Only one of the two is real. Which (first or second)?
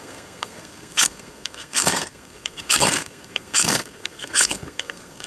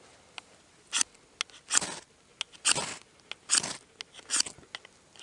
second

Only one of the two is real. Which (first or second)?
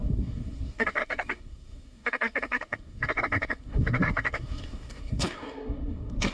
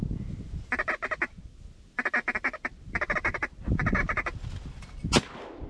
second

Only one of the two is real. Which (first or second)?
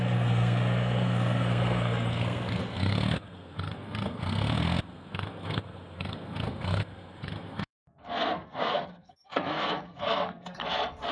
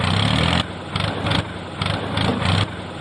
second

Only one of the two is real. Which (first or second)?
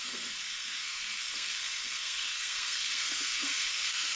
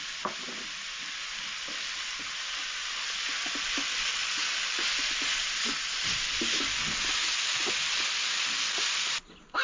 second